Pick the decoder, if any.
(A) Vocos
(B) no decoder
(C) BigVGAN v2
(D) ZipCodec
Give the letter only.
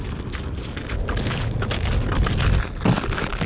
B